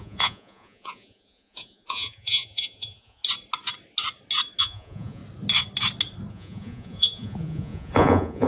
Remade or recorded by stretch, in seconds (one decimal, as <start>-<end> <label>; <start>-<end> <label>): 0.0-3.2 remade; 3.2-4.6 recorded; 4.6-5.2 remade; 5.2-6.3 recorded; 6.3-8.5 remade